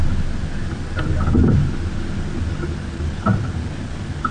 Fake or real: real